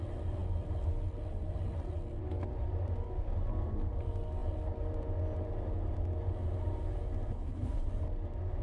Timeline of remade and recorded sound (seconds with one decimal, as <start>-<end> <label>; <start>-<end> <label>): 0.0-7.3 recorded; 7.3-7.9 remade; 7.9-8.6 recorded